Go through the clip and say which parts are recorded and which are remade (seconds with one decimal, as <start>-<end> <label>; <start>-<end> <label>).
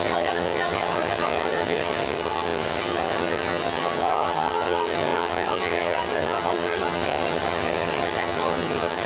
0.0-9.1 remade